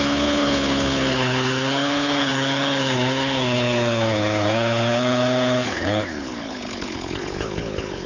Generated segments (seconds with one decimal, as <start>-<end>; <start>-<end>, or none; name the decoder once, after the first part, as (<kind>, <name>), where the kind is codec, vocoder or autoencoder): 0.0-8.1 (codec, HILCodec)